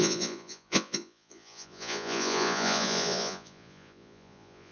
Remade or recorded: remade